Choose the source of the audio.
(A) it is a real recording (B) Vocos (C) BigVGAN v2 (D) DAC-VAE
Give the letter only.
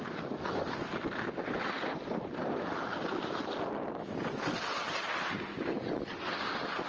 A